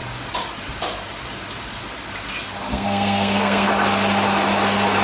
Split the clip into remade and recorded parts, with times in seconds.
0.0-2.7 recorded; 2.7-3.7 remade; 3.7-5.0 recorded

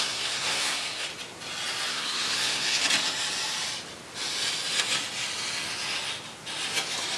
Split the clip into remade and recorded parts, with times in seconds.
0.0-1.1 remade; 1.1-1.9 recorded; 1.9-2.8 remade; 2.8-7.2 recorded

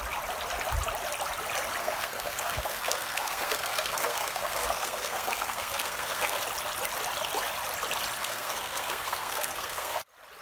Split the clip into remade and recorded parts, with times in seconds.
0.0-1.8 recorded; 1.8-6.4 remade; 6.4-8.2 recorded; 8.2-10.0 remade; 10.0-10.4 recorded

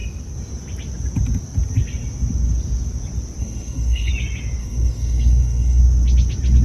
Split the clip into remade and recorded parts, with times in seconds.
0.0-3.4 recorded; 3.4-4.1 remade; 4.1-4.6 recorded; 4.6-5.8 remade; 5.8-6.6 recorded

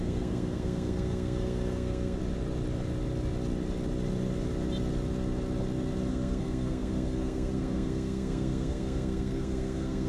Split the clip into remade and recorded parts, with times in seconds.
0.0-2.2 remade; 2.2-6.1 recorded; 6.1-10.1 remade

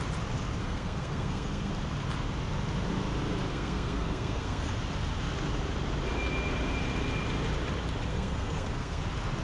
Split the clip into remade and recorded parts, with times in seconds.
0.0-0.6 recorded; 0.6-1.7 remade; 1.7-3.5 recorded; 3.5-4.7 remade; 4.7-8.1 recorded; 8.1-9.0 remade; 9.0-9.4 recorded

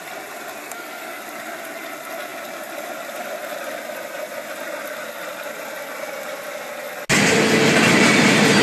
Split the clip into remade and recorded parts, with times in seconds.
0.0-0.6 recorded; 0.6-1.2 remade; 1.2-8.6 recorded